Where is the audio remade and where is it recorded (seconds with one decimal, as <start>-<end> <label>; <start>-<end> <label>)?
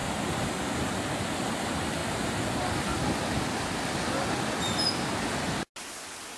0.0-6.4 recorded